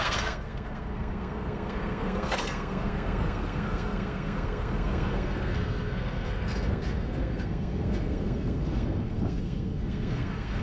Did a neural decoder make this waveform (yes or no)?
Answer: yes